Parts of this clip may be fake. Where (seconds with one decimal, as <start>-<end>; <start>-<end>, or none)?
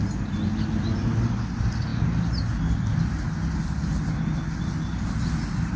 none